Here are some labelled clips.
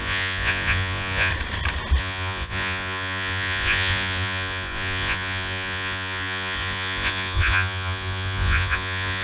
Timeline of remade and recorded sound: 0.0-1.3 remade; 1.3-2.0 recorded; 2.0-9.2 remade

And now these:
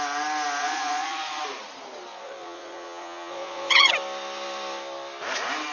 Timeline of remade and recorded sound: 0.0-0.6 recorded; 0.6-1.4 remade; 1.4-2.1 recorded; 2.1-3.9 remade; 3.9-5.7 recorded

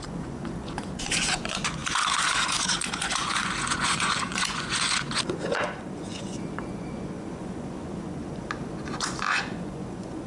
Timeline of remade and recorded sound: 0.0-10.3 remade

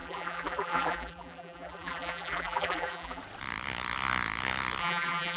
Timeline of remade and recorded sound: 0.0-3.2 remade; 3.2-4.8 recorded; 4.8-5.4 remade

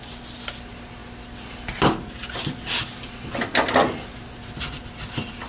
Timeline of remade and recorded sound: 0.0-5.5 recorded

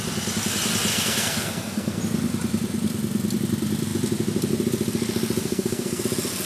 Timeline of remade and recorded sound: 0.0-0.9 recorded; 0.9-2.0 remade; 2.0-5.4 recorded; 5.4-6.0 remade; 6.0-6.5 recorded